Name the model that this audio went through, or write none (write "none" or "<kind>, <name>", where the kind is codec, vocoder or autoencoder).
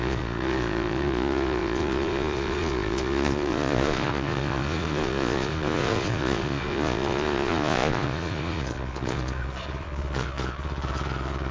vocoder, Vocos